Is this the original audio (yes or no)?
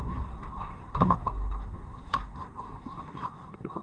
no